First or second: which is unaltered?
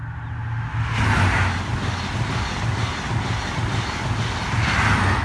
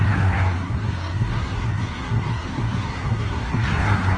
first